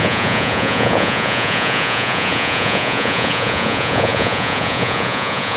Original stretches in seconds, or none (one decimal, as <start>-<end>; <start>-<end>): none